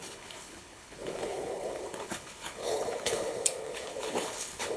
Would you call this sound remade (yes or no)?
yes